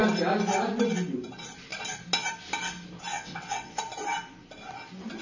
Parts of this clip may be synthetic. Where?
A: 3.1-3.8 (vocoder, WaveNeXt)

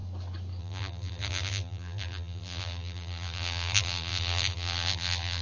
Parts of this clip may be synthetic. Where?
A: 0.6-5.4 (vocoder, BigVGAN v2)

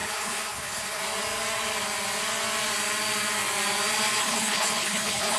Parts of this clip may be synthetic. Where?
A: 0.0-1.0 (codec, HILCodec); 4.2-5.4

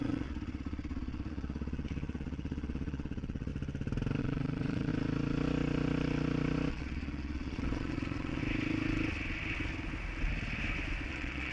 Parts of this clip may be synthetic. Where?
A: 0.0-3.5 (vocoder, Vocos); 4.2-4.9; 6.7-8.4; 11.1-11.5

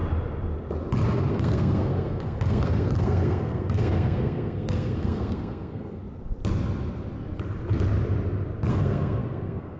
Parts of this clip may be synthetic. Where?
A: 1.3-6.0 (codec, SNAC); 8.7-9.8

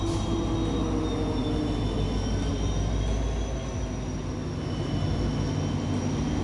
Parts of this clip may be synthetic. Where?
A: 4.4-5.2 (vocoder, BigVGAN v2)

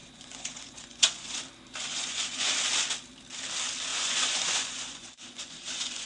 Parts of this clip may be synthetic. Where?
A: 0.0-1.4 (vocoder, Vocos); 1.9-2.5; 3.9-6.1